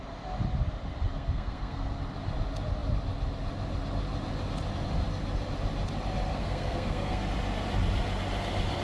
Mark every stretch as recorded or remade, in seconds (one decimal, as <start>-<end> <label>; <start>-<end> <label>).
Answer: 0.0-1.1 recorded; 1.1-1.9 remade; 1.9-6.3 recorded; 6.3-7.2 remade; 7.2-8.8 recorded